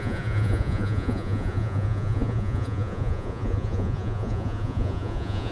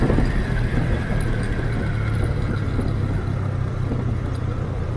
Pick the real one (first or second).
second